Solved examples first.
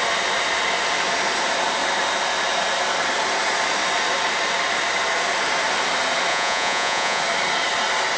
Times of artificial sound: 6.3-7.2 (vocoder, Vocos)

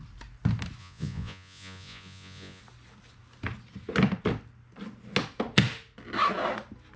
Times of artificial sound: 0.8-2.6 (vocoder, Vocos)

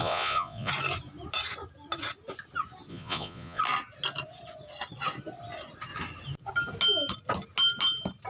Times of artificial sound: 0.0-0.7 (vocoder, Vocos); 2.9-3.6